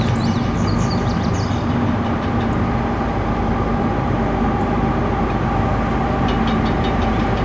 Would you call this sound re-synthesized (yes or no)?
no